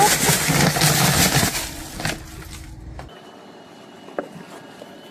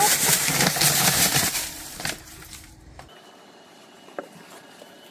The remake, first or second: second